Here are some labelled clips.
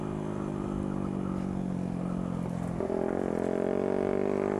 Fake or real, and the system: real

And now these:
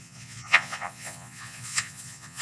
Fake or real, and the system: fake, vocoder, Vocos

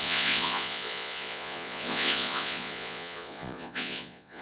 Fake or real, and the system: fake, vocoder, Vocos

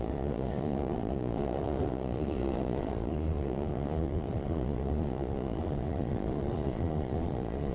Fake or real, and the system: fake, vocoder, Vocos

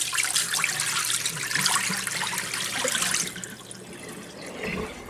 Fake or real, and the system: real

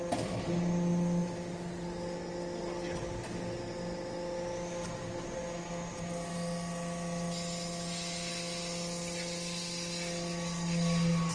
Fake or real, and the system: real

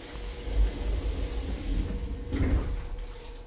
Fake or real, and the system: real